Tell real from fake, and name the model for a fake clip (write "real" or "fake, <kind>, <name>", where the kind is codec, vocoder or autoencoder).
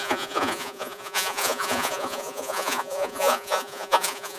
fake, vocoder, Vocos